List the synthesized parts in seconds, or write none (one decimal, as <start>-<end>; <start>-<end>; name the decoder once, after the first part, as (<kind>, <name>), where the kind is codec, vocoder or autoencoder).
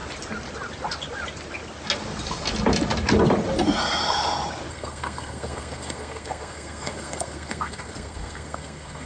4.7-9.1 (codec, SNAC)